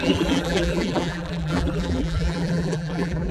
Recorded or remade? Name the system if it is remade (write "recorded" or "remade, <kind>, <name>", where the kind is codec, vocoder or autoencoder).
remade, vocoder, BigVGAN v2